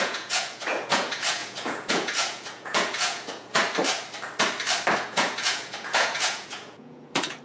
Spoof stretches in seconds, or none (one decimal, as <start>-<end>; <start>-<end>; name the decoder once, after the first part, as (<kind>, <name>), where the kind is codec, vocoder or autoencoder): 0.0-3.6 (vocoder, Vocos); 5.0-7.4